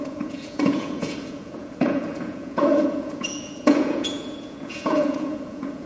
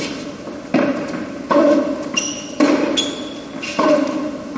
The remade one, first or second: first